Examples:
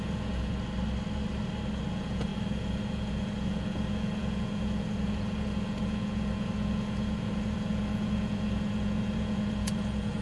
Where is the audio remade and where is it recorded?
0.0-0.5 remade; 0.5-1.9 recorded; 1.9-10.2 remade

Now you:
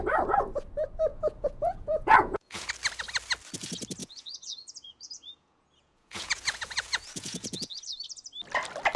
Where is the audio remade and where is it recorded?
0.0-1.1 recorded; 1.1-2.7 remade; 2.7-4.0 recorded; 4.0-7.8 remade; 7.8-9.0 recorded